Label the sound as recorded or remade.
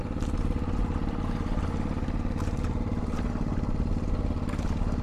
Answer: recorded